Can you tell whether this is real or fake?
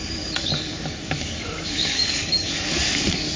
fake